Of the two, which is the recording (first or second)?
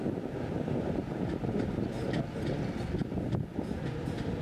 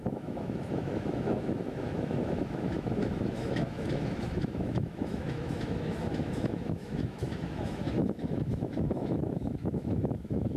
first